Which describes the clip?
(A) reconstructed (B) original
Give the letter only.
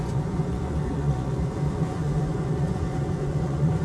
A